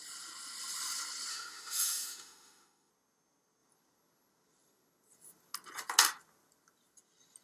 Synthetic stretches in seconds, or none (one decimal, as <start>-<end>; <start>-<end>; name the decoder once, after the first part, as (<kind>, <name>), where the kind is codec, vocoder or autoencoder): 1.3-2.9 (autoencoder, DAC-VAE)